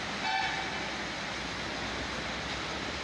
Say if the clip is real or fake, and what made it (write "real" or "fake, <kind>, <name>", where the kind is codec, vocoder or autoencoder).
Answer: real